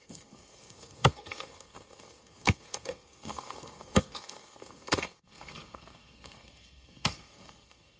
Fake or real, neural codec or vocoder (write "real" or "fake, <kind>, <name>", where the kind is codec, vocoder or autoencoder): fake, codec, SNAC